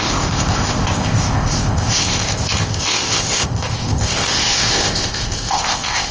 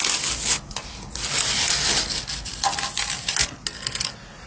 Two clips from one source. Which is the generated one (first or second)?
first